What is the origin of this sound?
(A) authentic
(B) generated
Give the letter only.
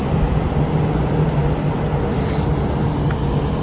A